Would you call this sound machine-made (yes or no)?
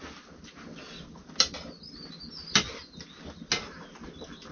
no